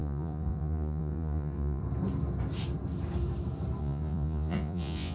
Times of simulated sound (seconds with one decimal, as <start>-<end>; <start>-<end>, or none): 0.0-1.8; 3.8-5.1